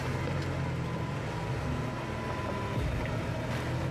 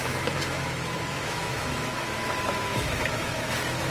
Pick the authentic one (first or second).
first